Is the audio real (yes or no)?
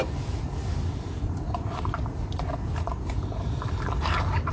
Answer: yes